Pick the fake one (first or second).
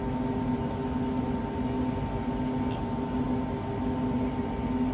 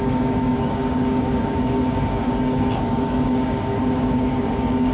second